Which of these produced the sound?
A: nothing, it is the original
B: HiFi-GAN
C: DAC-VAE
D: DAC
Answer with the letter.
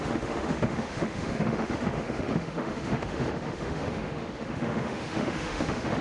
C